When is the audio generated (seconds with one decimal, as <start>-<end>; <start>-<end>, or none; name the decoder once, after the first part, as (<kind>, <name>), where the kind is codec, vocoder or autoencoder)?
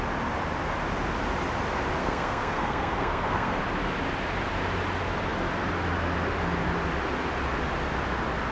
2.0-3.6 (codec, SNAC)